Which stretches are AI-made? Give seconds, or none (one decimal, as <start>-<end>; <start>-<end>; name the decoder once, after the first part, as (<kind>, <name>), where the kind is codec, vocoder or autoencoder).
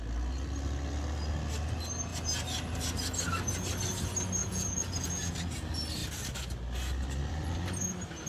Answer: 4.4-5.2 (vocoder, Vocos)